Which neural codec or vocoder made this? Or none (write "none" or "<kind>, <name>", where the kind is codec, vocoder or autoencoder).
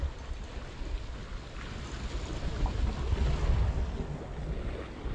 none